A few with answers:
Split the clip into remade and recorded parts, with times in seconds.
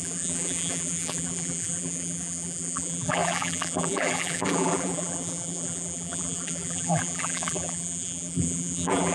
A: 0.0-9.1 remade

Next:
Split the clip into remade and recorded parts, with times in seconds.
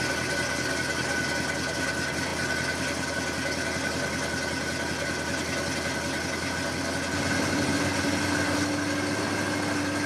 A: 0.0-10.1 recorded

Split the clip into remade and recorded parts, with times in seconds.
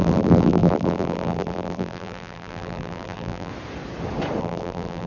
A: 0.0-3.5 remade; 3.5-4.4 recorded; 4.4-5.1 remade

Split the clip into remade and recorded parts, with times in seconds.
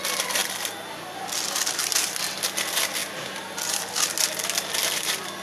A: 0.0-5.4 recorded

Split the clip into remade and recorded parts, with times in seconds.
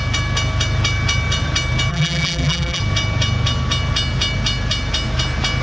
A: 0.0-1.9 recorded; 1.9-2.8 remade; 2.8-5.6 recorded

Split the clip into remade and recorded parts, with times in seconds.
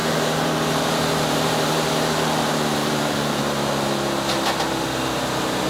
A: 0.0-3.4 remade; 3.4-5.7 recorded